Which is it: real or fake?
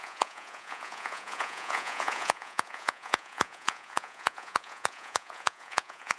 fake